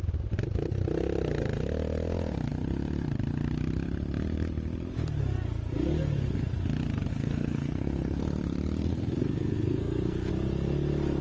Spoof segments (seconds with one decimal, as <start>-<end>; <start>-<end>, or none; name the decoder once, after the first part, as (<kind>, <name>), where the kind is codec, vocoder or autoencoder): 7.1-8.2 (codec, SNAC); 8.9-10.3